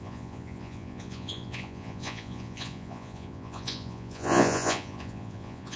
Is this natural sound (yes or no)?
no